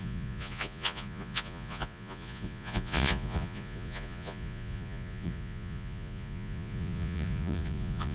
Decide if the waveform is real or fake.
fake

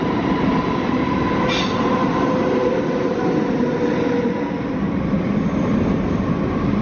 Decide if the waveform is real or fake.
real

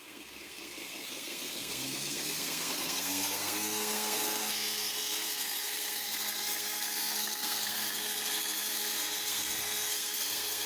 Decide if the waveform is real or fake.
fake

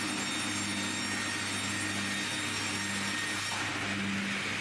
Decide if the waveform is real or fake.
real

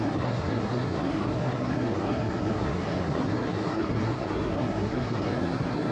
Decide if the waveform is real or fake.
fake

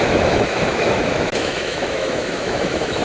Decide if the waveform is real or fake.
fake